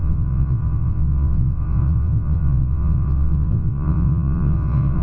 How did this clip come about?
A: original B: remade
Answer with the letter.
B